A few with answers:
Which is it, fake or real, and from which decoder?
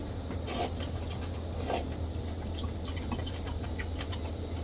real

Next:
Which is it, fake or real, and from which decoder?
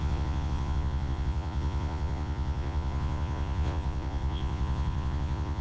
fake, vocoder, Vocos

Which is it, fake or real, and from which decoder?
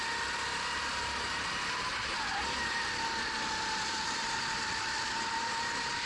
real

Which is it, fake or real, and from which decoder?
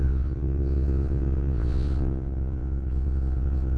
fake, vocoder, Vocos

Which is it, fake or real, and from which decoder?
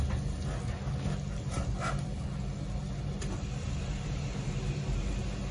real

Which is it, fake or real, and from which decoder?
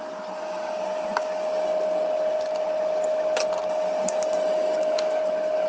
real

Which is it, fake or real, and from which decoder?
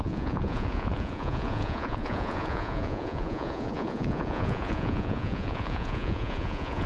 fake, vocoder, Vocos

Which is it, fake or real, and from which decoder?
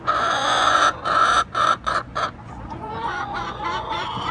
fake, vocoder, Vocos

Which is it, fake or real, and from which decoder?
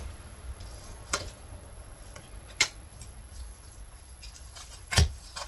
fake, vocoder, Vocos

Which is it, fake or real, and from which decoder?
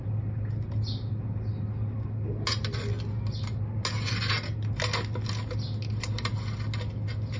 real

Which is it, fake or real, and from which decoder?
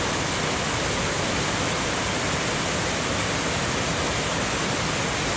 real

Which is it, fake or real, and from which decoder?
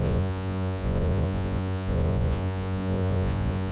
fake, vocoder, Vocos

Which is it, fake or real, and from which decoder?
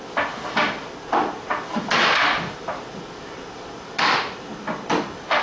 real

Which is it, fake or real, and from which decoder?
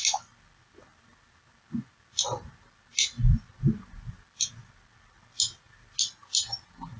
real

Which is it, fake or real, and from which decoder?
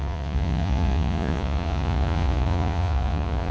fake, vocoder, Vocos